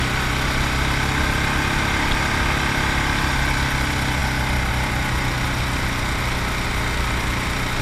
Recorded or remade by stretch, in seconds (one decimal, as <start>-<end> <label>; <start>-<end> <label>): 0.0-7.8 recorded

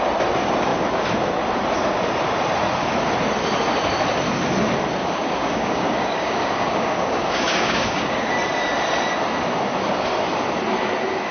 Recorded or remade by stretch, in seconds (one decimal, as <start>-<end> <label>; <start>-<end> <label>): 0.0-5.0 recorded; 5.0-8.3 remade; 8.3-11.3 recorded

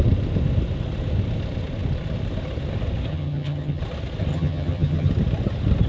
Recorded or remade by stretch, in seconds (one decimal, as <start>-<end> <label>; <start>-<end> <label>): 0.0-3.1 recorded; 3.1-3.8 remade; 3.8-4.3 recorded; 4.3-5.1 remade; 5.1-5.9 recorded

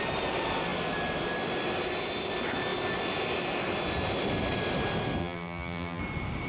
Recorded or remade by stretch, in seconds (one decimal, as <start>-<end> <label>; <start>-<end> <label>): 0.0-5.2 recorded; 5.2-6.0 remade; 6.0-6.5 recorded